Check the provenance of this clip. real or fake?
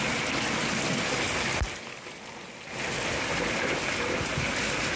real